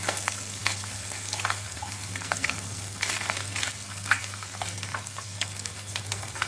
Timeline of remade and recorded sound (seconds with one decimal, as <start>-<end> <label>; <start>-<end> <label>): 0.0-6.5 remade